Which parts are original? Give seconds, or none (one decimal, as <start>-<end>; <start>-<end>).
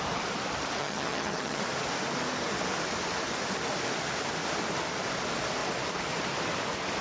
0.0-0.8; 1.6-7.0